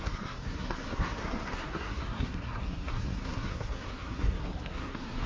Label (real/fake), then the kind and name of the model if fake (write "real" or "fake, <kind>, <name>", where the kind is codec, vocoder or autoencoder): fake, codec, SNAC